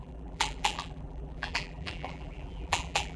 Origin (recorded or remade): remade